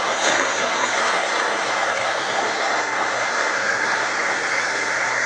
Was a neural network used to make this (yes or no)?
yes